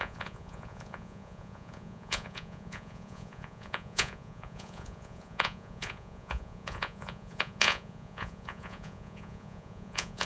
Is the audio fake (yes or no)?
yes